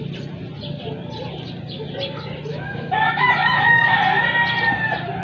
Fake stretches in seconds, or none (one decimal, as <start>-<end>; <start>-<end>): 2.5-3.9